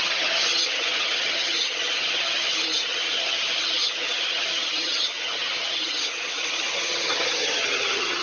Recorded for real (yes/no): no